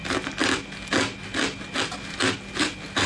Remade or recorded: recorded